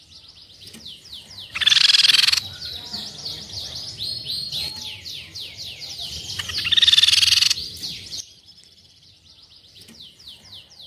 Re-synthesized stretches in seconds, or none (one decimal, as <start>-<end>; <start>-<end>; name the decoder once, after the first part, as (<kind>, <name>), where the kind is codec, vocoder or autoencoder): none